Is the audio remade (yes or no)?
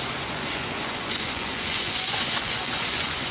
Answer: yes